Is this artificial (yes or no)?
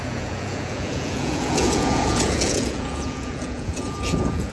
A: yes